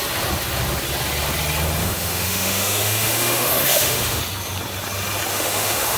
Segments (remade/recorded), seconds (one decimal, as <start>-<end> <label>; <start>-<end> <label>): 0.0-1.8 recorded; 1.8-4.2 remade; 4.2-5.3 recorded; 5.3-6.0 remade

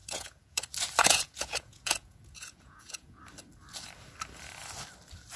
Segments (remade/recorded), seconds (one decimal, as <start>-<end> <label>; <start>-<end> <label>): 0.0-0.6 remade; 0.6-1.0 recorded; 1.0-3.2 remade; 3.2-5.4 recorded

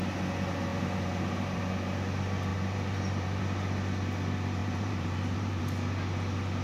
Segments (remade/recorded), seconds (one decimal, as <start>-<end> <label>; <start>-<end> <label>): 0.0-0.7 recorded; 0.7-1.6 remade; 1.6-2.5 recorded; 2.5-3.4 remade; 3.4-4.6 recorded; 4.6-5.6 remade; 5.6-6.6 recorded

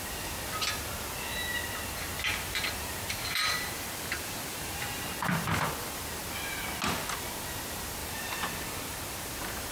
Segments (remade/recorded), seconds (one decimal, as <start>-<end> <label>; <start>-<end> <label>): 0.0-2.3 recorded; 2.3-5.1 remade; 5.1-8.0 recorded; 8.0-9.7 remade